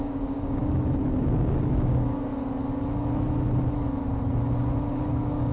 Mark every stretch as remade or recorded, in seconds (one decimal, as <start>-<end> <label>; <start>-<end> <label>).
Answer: 0.0-0.6 remade; 0.6-1.2 recorded; 1.2-2.3 remade; 2.3-4.9 recorded; 4.9-5.5 remade